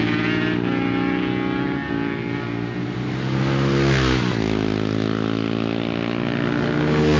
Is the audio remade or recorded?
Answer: recorded